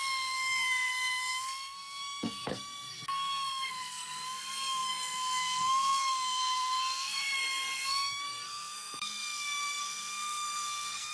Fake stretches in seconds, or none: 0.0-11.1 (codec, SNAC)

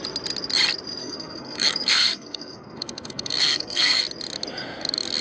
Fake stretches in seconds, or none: 1.0-4.0 (codec, SNAC)

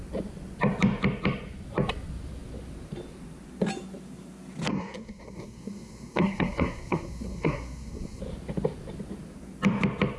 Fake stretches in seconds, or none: 4.7-8.2 (codec, SNAC)

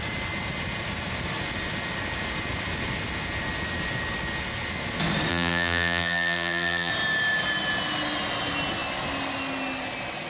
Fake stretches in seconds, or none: 5.3-6.9 (vocoder, BigVGAN v2)